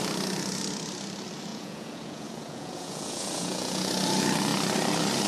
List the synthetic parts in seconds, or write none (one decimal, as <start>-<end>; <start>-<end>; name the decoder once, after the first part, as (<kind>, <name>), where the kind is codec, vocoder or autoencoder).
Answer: 1.5-3.9 (vocoder, Vocos)